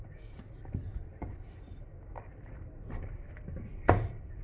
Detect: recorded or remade remade